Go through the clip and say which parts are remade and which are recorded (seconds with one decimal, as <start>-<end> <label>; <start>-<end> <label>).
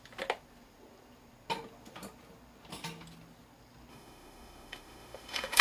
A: 0.0-3.9 recorded; 3.9-5.6 remade